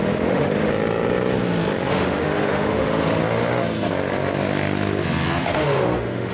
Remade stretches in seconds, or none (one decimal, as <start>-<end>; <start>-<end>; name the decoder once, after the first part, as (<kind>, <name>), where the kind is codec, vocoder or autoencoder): 0.0-0.7 (autoencoder, DAC-VAE); 1.9-3.2; 5.4-6.3

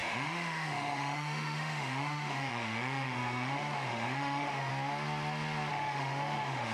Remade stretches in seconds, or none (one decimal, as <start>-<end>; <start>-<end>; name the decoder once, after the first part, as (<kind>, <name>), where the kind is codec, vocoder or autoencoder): 0.0-4.7 (autoencoder, DAC-VAE); 5.7-6.7

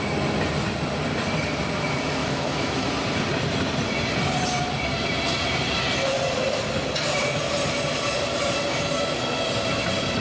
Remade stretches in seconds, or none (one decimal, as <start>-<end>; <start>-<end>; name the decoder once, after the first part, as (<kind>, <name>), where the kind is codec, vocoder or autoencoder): 2.2-2.9 (autoencoder, DAC-VAE)

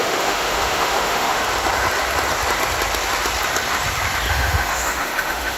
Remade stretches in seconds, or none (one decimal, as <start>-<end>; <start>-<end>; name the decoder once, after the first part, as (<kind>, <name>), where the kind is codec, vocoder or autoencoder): 0.0-1.4 (autoencoder, DAC-VAE); 4.3-5.6

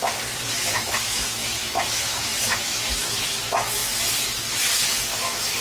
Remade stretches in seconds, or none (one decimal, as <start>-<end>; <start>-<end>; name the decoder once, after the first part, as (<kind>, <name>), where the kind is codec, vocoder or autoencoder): 0.5-3.8 (autoencoder, DAC-VAE); 4.9-5.6

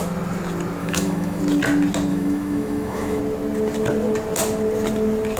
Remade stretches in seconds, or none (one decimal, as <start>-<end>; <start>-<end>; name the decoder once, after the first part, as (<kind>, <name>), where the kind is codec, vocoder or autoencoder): 0.8-1.4 (autoencoder, DAC-VAE); 2.1-3.2

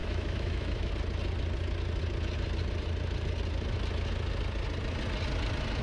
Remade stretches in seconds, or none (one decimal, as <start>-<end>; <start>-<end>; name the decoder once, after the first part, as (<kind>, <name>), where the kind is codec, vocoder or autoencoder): 0.0-0.9 (autoencoder, DAC-VAE)